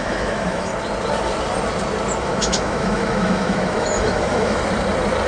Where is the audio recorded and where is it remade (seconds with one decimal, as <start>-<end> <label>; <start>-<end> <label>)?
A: 0.0-0.7 remade; 0.7-2.2 recorded; 2.2-4.6 remade; 4.6-5.3 recorded